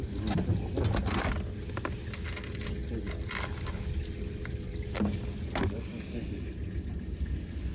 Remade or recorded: recorded